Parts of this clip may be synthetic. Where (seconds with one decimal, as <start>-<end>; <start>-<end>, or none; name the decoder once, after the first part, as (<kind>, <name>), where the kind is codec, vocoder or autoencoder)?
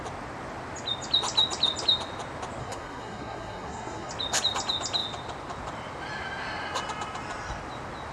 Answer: 2.6-4.1 (codec, SNAC)